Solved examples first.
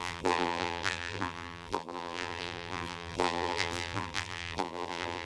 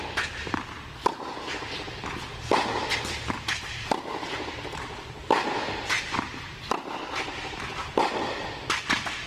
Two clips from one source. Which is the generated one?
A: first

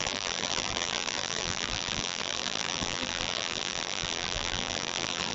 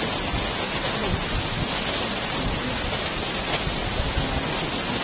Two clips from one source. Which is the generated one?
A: first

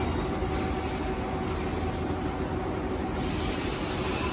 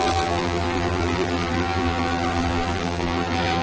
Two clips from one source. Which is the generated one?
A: second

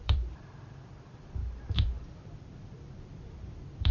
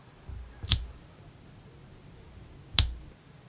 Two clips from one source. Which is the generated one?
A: first